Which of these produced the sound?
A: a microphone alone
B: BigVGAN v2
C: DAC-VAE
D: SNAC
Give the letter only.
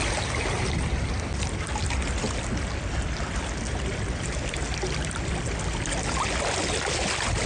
A